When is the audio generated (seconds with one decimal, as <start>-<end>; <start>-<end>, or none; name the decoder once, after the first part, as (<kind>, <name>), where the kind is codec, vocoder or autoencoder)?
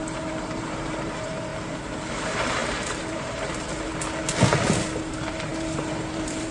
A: 0.0-1.5 (vocoder, BigVGAN v2); 2.1-3.9; 5.0-6.5